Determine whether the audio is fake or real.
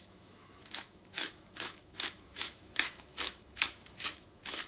fake